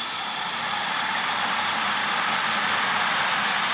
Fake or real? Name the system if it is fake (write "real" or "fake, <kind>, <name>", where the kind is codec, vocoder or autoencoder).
real